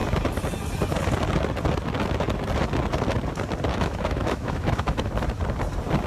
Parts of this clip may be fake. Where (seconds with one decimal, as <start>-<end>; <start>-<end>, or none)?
3.7-5.1